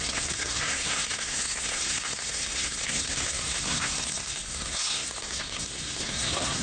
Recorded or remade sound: remade